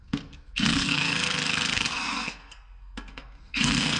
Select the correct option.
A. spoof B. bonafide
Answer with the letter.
A